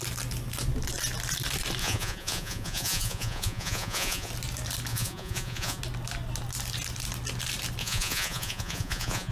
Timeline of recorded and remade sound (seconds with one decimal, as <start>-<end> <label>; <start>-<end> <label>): 0.0-1.8 recorded; 1.8-4.3 remade; 4.3-4.9 recorded; 4.9-5.8 remade; 5.8-7.8 recorded; 7.8-9.3 remade